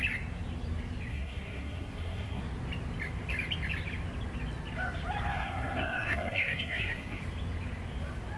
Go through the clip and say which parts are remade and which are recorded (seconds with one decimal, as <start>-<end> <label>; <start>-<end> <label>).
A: 0.0-1.1 recorded; 1.1-2.4 remade; 2.4-5.3 recorded; 5.3-7.2 remade; 7.2-8.4 recorded